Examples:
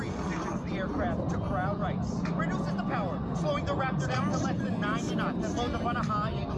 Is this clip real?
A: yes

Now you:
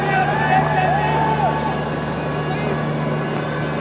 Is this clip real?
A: yes